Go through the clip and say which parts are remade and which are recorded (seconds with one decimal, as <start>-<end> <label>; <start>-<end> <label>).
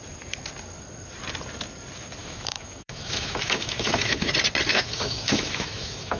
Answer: 0.0-2.2 recorded; 2.2-4.3 remade; 4.3-4.7 recorded; 4.7-6.2 remade